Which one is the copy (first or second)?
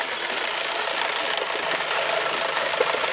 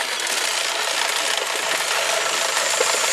first